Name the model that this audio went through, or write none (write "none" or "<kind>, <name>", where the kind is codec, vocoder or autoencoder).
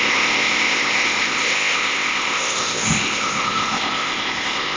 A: codec, ZipCodec